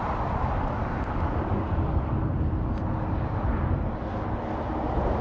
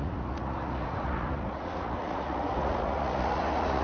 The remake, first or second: second